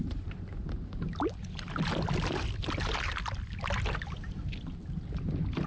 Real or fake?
real